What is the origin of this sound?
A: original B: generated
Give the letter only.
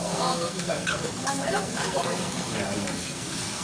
B